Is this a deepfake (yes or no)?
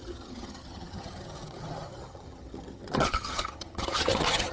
yes